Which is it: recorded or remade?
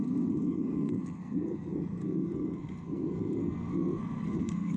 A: remade